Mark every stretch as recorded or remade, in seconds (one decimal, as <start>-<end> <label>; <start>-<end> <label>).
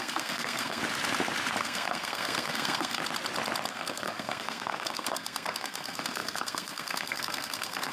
0.0-0.8 remade; 0.8-1.6 recorded; 1.6-3.0 remade; 3.0-3.7 recorded; 3.7-7.9 remade